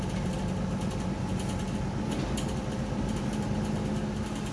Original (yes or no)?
yes